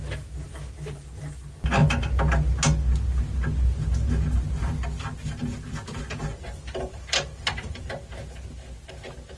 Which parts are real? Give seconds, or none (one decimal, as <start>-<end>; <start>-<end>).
0.0-6.3; 7.9-9.4